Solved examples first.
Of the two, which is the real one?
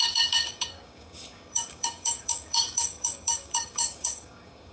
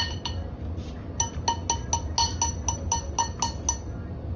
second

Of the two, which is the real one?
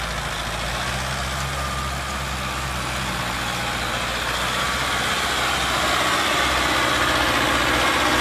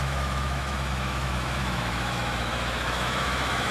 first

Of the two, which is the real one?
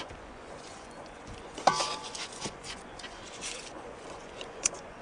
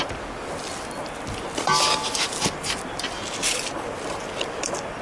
second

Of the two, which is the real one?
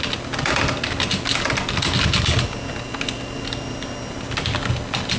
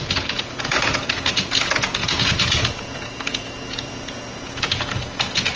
first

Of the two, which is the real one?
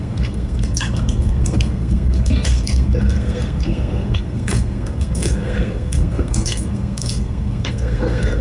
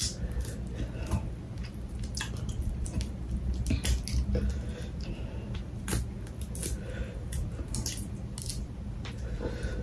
second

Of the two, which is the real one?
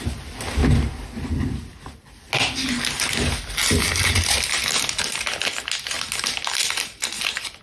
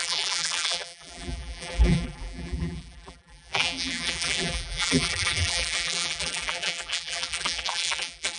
first